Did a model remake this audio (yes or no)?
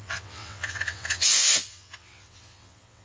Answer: yes